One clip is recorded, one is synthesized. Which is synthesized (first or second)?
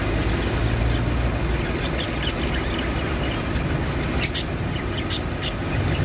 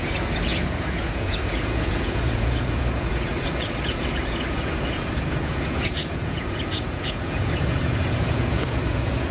second